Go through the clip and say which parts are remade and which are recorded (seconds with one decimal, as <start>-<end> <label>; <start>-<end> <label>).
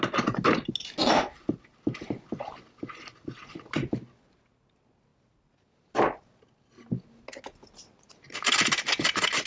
0.0-9.5 recorded